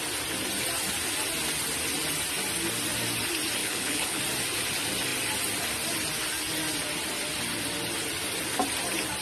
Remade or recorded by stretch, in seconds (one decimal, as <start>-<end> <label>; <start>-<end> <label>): 0.0-3.6 recorded; 3.6-4.2 remade; 4.2-9.2 recorded